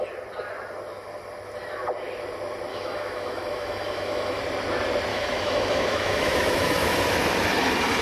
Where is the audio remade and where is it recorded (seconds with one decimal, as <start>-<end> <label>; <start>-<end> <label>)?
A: 0.0-2.7 recorded; 2.7-4.4 remade; 4.4-5.1 recorded; 5.1-7.0 remade; 7.0-8.0 recorded